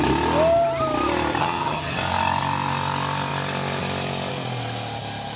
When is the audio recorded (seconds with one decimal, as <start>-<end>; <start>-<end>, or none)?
0.0-1.4; 1.9-5.4